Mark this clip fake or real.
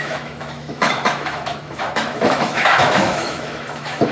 fake